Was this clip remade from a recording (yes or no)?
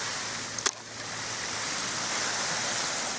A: no